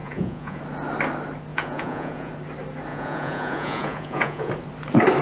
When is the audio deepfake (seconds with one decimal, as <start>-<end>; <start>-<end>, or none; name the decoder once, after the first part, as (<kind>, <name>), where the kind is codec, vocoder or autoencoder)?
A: 0.0-0.6 (vocoder, Vocos); 1.5-2.3; 2.9-4.5